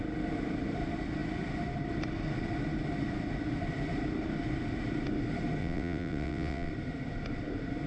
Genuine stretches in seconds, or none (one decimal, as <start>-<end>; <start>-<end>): 0.0-5.6; 6.7-7.9

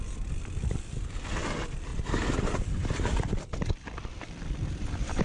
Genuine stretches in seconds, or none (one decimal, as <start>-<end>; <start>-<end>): 0.0-1.9